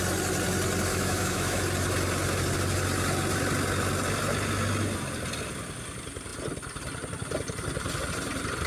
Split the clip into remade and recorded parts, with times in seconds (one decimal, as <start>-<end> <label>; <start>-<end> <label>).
0.0-0.9 recorded; 0.9-1.6 remade; 1.6-8.7 recorded